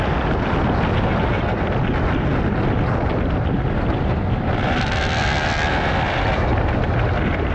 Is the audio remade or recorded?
recorded